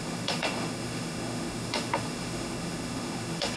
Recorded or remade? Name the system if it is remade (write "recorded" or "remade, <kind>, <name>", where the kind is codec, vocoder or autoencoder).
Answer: remade, autoencoder, DAC-VAE